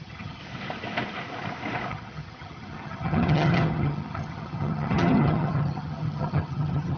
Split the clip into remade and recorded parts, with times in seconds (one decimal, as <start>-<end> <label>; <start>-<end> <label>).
0.0-0.4 remade; 0.4-1.9 recorded; 1.9-7.0 remade